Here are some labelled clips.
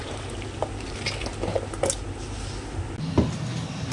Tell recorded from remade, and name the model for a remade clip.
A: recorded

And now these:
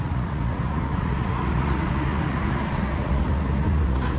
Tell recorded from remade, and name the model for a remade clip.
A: remade, vocoder, Vocos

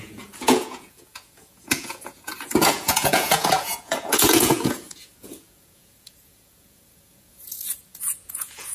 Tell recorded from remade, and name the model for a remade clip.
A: remade, vocoder, Vocos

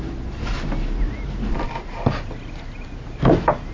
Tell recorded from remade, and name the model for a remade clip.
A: recorded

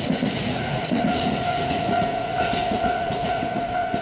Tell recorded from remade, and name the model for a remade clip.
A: remade, vocoder, Vocos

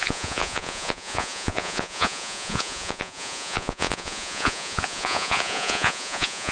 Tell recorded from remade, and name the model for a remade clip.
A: remade, vocoder, Vocos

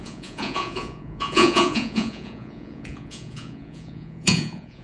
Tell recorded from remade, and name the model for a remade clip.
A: remade, vocoder, Vocos